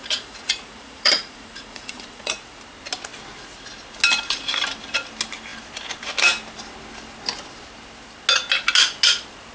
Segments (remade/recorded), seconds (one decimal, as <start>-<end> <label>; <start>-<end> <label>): 0.0-2.6 remade; 2.6-9.5 recorded